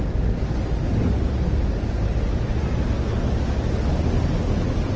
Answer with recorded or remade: recorded